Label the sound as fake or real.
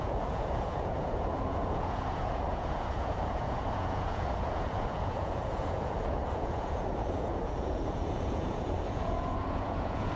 fake